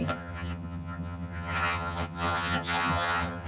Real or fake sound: fake